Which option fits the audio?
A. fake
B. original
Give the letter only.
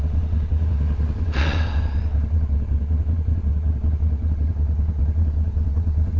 A